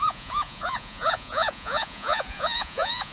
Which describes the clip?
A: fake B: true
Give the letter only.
A